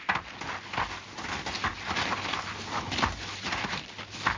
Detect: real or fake real